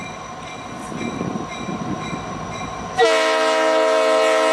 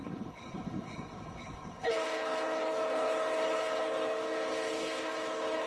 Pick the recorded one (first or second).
first